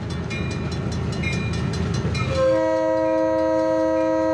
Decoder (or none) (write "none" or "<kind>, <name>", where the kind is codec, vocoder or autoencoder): none